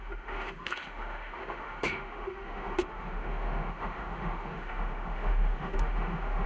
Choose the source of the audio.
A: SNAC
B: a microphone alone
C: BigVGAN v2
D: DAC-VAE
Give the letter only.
D